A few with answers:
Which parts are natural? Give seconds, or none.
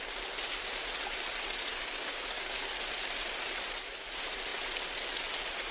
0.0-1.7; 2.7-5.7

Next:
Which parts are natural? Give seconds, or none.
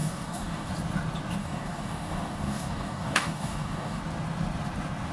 0.7-1.4; 4.0-5.1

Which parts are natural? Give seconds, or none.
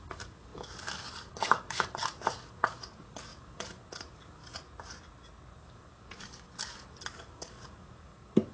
4.4-5.6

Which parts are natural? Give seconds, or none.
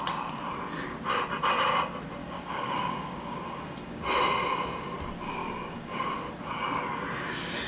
0.0-2.2; 4.0-5.4; 6.0-7.7